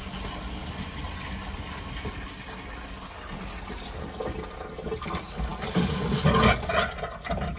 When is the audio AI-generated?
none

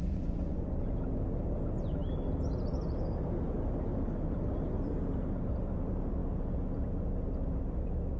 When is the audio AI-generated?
0.0-0.8 (vocoder, Vocos)

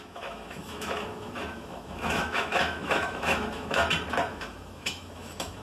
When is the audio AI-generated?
0.0-3.8 (autoencoder, DAC-VAE); 4.3-5.6